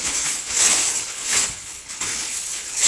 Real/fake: fake